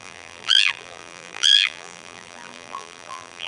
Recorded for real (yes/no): no